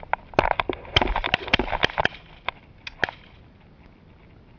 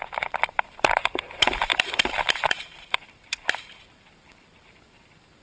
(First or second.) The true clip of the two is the first